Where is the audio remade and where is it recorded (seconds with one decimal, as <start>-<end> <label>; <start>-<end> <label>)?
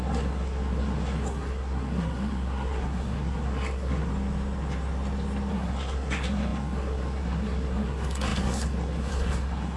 0.0-4.1 remade; 4.1-5.5 recorded; 5.5-9.8 remade